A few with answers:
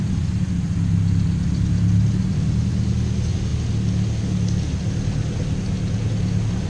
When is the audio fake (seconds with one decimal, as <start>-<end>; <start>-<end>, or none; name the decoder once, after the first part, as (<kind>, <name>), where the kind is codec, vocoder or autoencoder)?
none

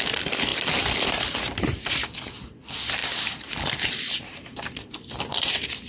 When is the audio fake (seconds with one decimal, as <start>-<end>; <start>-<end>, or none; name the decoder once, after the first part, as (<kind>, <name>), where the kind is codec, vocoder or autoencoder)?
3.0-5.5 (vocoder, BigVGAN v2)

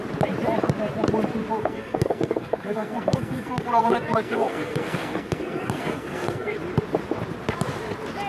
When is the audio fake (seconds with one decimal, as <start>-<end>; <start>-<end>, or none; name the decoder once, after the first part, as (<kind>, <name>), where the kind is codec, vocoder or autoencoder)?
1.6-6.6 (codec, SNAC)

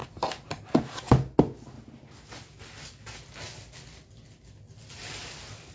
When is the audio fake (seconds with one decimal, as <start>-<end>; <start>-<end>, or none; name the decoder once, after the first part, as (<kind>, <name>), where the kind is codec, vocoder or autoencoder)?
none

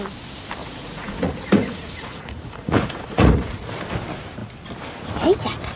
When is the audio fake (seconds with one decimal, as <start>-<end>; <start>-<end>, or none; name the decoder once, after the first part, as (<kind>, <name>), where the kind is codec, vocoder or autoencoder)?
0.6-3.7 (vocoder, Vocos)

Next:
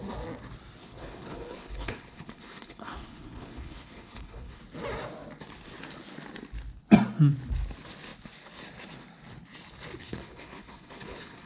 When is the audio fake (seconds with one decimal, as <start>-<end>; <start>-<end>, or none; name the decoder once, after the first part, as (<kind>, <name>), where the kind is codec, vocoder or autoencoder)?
0.8-4.6 (codec, HILCodec); 10.0-11.5